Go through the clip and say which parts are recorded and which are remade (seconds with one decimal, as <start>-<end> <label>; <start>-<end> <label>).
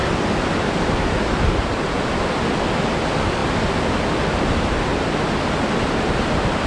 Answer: 0.0-6.7 recorded